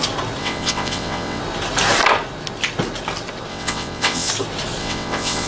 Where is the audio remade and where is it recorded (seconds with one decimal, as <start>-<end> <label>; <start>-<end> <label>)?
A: 0.0-0.4 recorded; 0.4-1.4 remade; 1.4-3.5 recorded; 3.5-4.3 remade; 4.3-4.8 recorded; 4.8-5.5 remade